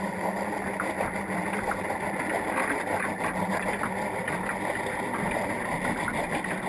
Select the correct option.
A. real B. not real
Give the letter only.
A